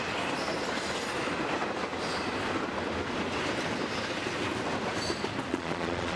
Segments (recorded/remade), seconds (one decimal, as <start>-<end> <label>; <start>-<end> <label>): 0.0-5.5 recorded; 5.5-6.2 remade